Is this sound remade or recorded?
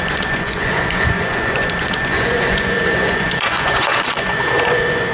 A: remade